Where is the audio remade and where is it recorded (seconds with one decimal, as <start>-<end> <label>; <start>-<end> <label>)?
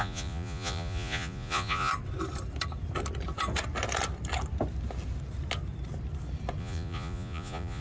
0.0-1.9 remade; 1.9-6.6 recorded; 6.6-7.8 remade